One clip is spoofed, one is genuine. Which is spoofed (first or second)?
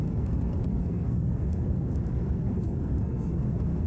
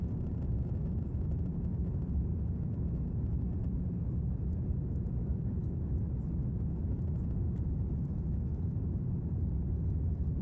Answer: first